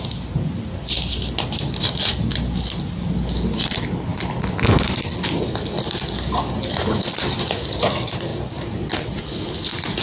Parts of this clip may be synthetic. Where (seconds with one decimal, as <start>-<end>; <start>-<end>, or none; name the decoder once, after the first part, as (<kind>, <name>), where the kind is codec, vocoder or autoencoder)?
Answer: none